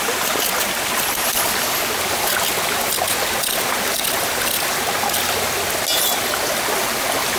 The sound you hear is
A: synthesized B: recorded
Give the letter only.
B